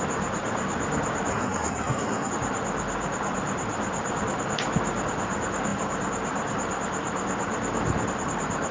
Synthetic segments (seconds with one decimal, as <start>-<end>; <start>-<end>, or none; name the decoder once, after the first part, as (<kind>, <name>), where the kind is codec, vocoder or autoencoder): 1.3-2.3 (codec, SNAC)